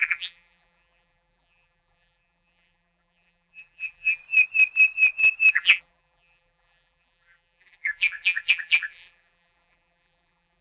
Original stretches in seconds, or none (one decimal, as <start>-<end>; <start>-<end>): 4.2-5.5